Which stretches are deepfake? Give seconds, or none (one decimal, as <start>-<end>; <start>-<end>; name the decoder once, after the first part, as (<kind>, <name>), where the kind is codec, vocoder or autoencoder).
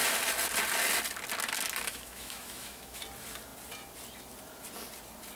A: 1.9-3.0 (autoencoder, DAC-VAE)